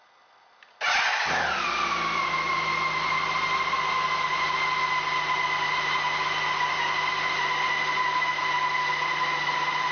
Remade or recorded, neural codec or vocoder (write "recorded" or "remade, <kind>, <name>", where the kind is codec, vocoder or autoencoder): recorded